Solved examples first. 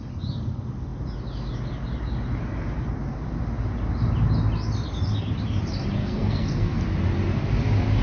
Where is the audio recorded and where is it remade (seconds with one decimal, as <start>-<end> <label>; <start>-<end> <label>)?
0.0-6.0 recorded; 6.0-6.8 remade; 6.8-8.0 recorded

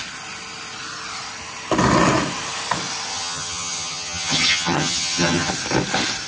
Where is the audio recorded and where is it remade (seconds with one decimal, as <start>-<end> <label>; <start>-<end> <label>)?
0.0-3.1 recorded; 3.1-5.5 remade; 5.5-6.3 recorded

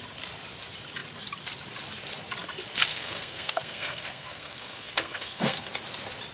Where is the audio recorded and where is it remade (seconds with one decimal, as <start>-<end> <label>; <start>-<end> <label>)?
0.0-2.9 recorded; 2.9-5.7 remade; 5.7-6.3 recorded